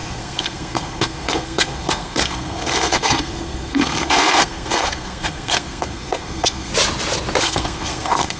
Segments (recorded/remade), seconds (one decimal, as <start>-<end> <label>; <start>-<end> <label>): 0.0-6.7 remade; 6.7-7.4 recorded; 7.4-8.4 remade